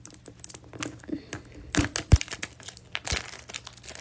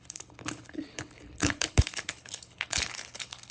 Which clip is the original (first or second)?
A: first